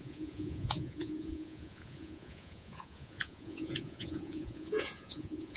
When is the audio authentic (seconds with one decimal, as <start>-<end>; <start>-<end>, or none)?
none